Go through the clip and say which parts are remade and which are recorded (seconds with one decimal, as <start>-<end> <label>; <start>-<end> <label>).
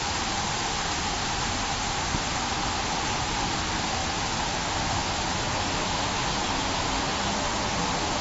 0.0-4.0 recorded; 4.0-4.6 remade; 4.6-7.1 recorded; 7.1-8.2 remade